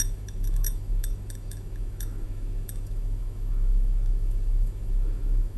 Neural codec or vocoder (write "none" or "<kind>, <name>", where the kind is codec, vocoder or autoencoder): autoencoder, DAC-VAE